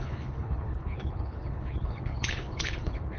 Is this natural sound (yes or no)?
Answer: no